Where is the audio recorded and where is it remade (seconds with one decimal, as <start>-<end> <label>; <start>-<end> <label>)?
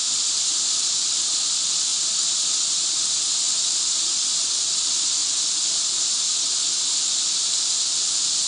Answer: 0.0-5.2 remade; 5.2-7.7 recorded; 7.7-8.5 remade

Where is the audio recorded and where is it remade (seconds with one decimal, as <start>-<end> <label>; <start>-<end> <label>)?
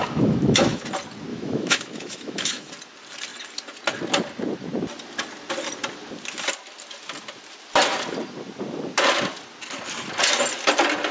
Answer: 0.0-0.8 remade; 0.8-1.3 recorded; 1.3-2.7 remade; 2.7-11.1 recorded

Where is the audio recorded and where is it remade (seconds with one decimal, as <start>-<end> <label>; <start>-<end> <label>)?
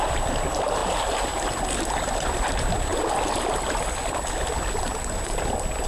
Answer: 0.0-5.9 recorded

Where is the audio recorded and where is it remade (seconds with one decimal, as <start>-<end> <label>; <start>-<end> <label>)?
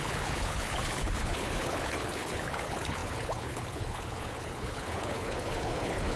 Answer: 0.0-6.2 remade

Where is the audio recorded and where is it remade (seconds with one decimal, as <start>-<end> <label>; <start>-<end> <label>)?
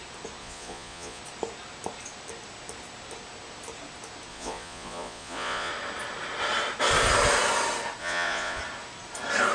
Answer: 0.0-0.4 recorded; 0.4-1.2 remade; 1.2-4.3 recorded; 4.3-5.7 remade; 5.7-8.0 recorded; 8.0-8.6 remade; 8.6-9.5 recorded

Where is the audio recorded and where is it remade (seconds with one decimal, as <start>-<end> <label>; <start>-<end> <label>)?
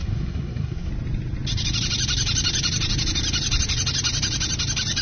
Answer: 0.0-0.9 remade; 0.9-5.0 recorded